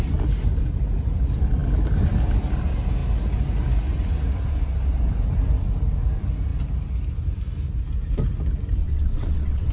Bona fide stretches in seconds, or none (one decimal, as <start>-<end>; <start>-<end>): 0.0-8.8